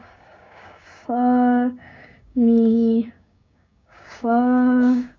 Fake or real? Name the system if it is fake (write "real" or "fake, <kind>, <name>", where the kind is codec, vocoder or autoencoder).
fake, codec, DAC